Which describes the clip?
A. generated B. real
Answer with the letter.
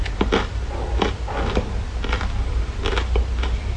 B